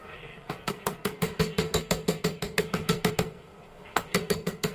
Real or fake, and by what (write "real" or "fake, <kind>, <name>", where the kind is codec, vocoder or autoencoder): fake, codec, SNAC